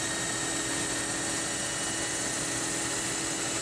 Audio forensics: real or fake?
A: real